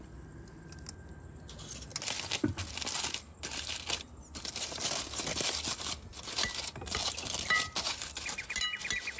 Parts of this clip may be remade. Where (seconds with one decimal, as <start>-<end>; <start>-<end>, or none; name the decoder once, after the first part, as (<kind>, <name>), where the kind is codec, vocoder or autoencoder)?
none